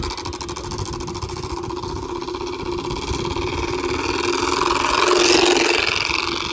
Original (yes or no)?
yes